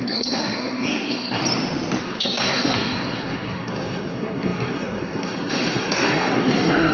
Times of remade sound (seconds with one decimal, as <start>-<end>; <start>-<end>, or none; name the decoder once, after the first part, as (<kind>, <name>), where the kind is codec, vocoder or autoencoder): 0.0-1.4 (codec, SNAC); 2.0-6.9